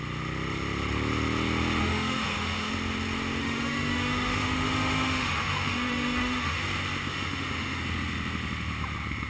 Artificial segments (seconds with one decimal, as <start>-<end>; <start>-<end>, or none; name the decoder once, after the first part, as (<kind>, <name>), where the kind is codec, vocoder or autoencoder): 1.8-2.7 (autoencoder, DAC-VAE); 3.4-6.6; 7.1-7.8